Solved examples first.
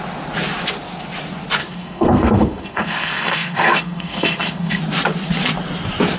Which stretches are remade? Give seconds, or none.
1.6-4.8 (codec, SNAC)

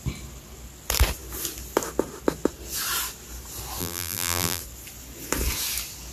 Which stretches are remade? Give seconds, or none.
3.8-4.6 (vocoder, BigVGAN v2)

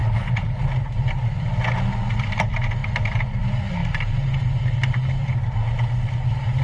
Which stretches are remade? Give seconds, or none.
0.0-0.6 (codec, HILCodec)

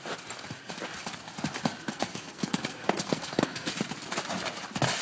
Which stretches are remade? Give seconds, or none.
1.9-3.7 (codec, SNAC)

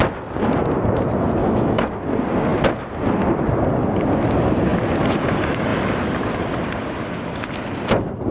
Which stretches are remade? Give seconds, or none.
1.4-1.9 (autoencoder, DAC-VAE)